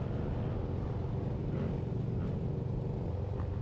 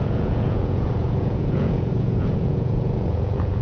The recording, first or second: first